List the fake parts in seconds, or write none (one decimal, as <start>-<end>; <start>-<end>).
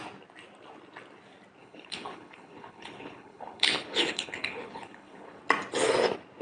1.6-5.4